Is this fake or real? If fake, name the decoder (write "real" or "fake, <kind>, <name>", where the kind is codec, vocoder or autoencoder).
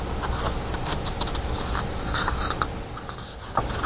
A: real